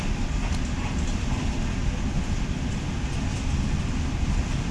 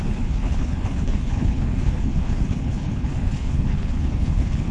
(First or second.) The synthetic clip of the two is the second